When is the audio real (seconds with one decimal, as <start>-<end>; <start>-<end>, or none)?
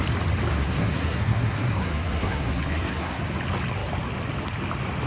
0.0-0.5; 3.2-5.1